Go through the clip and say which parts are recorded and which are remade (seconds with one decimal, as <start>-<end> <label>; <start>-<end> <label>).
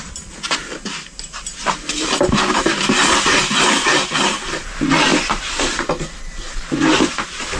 0.0-7.6 recorded